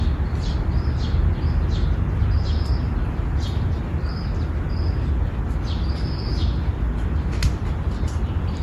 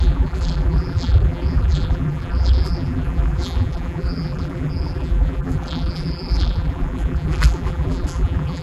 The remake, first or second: second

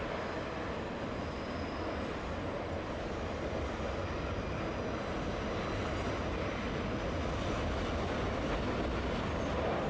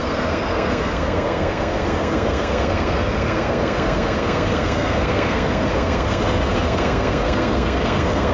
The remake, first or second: second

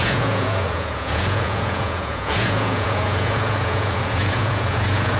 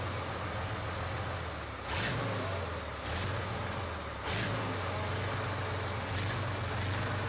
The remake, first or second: first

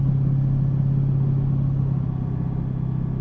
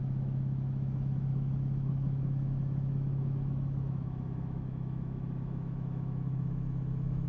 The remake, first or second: second